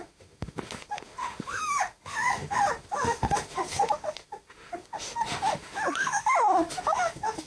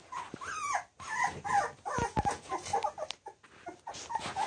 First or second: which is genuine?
second